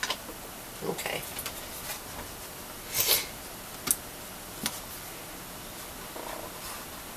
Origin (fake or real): real